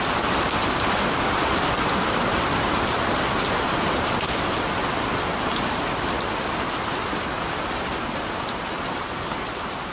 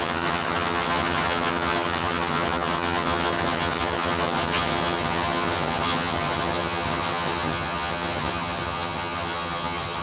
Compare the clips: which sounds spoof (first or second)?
second